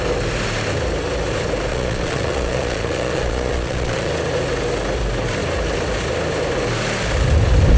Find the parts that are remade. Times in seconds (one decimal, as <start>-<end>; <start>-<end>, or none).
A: 1.7-4.1